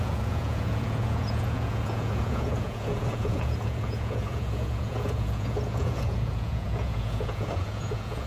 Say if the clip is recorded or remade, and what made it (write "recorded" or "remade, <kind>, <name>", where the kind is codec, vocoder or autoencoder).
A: remade, vocoder, Vocos